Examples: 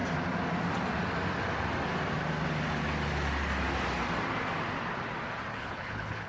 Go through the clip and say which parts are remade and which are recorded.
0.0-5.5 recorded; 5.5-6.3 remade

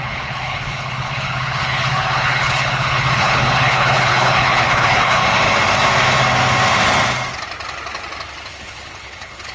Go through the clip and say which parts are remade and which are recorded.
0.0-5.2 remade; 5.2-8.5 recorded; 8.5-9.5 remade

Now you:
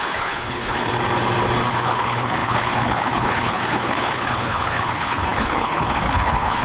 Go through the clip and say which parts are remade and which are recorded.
0.0-0.9 remade; 0.9-1.7 recorded; 1.7-6.6 remade

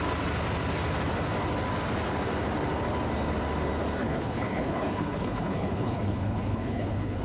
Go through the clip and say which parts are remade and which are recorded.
0.0-4.0 recorded; 4.0-7.2 remade

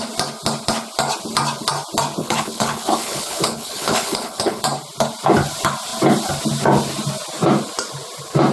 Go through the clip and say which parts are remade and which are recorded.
0.0-2.2 recorded; 2.2-4.6 remade; 4.6-8.5 recorded